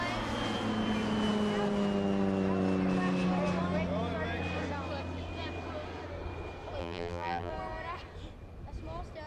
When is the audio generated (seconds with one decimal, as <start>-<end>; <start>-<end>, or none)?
6.8-7.5